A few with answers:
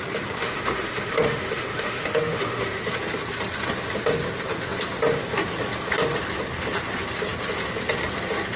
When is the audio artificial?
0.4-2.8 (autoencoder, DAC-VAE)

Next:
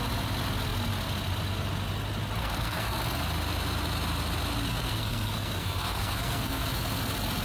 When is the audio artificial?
2.4-3.0 (codec, SNAC); 4.7-6.7

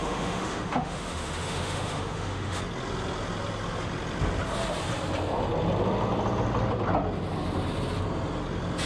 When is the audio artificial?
0.0-2.6 (autoencoder, DAC-VAE)

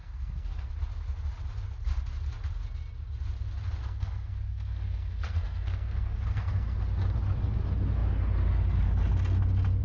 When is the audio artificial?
0.0-0.7 (codec, SNAC); 3.8-6.8

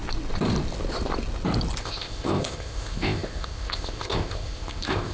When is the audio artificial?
1.8-5.1 (codec, ZipCodec)

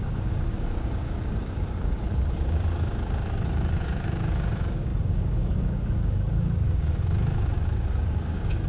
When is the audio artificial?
0.0-8.7 (codec, DAC)

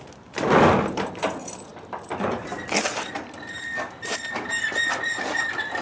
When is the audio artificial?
none

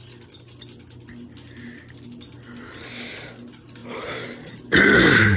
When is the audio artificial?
3.8-5.4 (vocoder, BigVGAN v2)